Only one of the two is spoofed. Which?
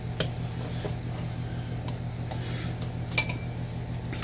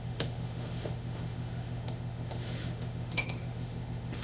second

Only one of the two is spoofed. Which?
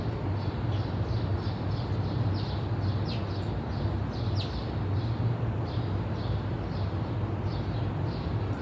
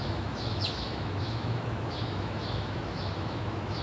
second